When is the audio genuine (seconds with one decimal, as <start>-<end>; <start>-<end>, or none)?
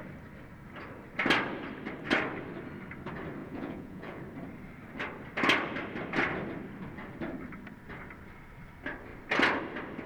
0.0-3.4; 4.2-10.1